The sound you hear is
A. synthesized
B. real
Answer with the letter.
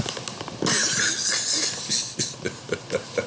B